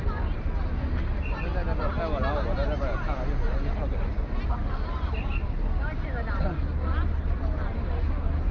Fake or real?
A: real